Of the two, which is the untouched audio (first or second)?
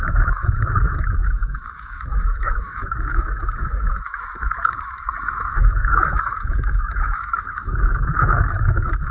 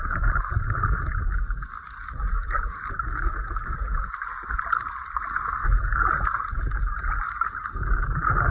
second